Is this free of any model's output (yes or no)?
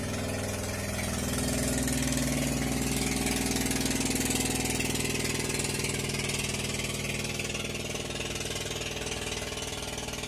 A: yes